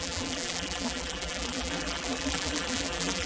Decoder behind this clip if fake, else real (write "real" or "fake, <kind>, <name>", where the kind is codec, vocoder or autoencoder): fake, vocoder, BigVGAN v2